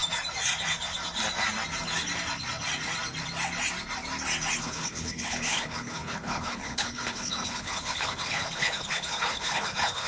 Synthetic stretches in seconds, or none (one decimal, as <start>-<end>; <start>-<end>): 4.6-10.1